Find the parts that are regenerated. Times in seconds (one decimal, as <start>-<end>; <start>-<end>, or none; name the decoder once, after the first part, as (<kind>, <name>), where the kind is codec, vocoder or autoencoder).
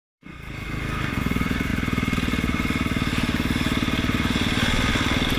0.0-1.2 (codec, SNAC)